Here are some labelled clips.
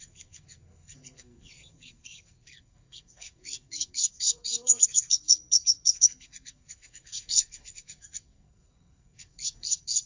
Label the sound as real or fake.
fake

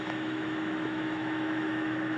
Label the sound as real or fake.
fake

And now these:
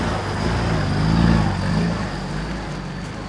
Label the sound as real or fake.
real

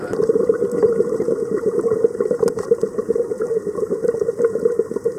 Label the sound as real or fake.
fake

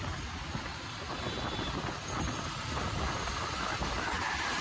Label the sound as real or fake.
real